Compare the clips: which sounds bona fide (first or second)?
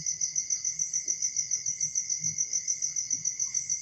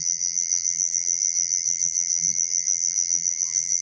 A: first